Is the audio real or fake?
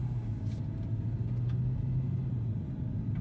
real